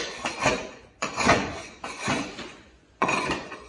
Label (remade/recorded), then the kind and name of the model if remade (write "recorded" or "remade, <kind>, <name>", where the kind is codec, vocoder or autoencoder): remade, vocoder, Vocos